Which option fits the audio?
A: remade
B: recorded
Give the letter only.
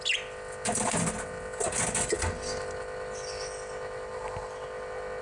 B